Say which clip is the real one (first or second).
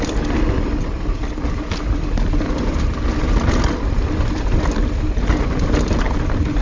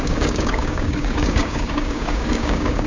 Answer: first